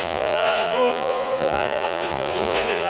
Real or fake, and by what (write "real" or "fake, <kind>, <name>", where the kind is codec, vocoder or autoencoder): fake, vocoder, Vocos